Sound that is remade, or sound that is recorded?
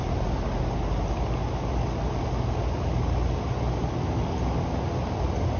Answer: recorded